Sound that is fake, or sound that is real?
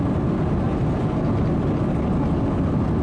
real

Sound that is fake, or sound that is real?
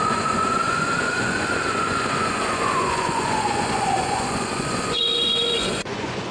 fake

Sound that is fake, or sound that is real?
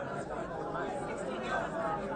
real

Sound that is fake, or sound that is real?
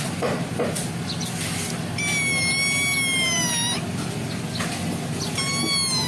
real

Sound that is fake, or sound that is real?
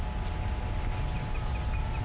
real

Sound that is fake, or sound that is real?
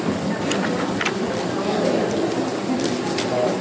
real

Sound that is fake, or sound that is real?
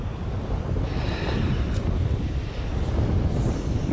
real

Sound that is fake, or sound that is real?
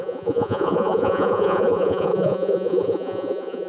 fake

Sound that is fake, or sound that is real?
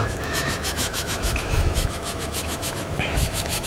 fake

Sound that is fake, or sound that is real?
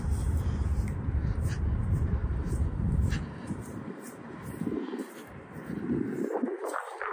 fake